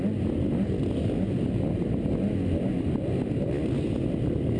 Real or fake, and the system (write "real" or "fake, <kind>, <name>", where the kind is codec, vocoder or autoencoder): real